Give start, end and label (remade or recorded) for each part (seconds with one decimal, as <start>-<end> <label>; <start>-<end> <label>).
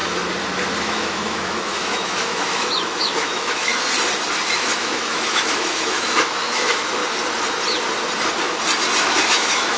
0.0-0.8 recorded; 0.8-3.7 remade; 3.7-4.5 recorded; 4.5-7.0 remade; 7.0-9.0 recorded; 9.0-9.8 remade